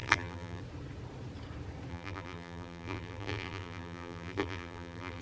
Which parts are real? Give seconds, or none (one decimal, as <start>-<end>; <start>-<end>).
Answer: 0.6-1.9